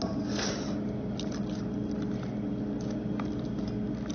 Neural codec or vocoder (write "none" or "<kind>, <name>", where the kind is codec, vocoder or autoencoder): none